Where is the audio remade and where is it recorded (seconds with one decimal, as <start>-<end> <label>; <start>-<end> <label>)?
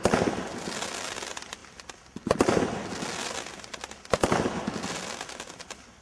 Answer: 0.0-6.0 recorded